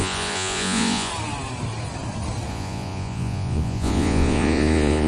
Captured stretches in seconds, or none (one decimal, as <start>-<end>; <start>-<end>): 1.1-2.5